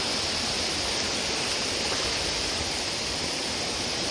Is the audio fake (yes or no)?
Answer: no